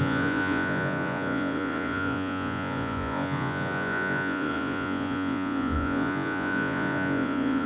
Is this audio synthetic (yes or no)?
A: yes